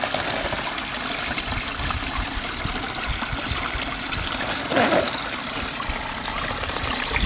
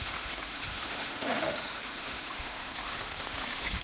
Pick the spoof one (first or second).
second